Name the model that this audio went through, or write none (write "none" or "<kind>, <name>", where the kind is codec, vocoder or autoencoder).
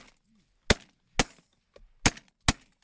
none